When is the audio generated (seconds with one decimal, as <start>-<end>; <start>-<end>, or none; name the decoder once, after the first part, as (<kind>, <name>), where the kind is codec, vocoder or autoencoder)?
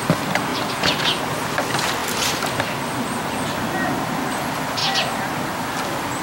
0.5-1.2 (vocoder, Vocos)